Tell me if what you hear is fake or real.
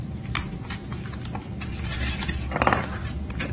fake